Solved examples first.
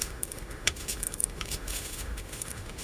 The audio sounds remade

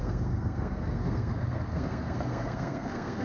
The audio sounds remade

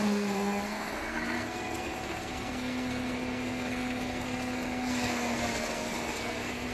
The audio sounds remade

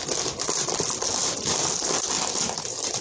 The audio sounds recorded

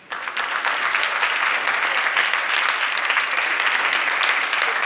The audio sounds recorded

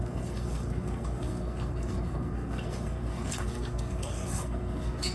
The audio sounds remade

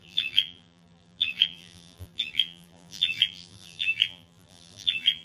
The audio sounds remade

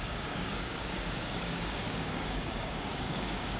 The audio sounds remade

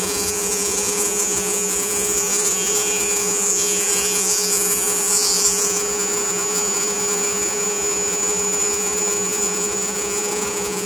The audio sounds remade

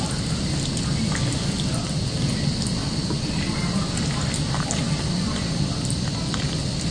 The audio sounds recorded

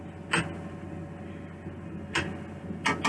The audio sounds recorded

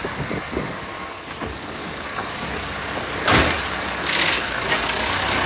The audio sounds remade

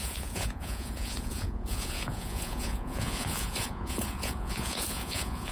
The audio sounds remade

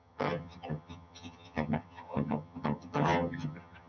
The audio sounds remade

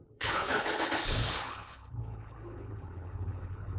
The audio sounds remade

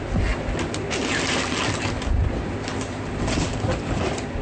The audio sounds recorded